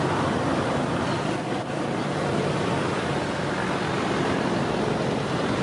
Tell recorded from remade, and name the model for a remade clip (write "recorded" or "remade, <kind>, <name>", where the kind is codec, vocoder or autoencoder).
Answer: recorded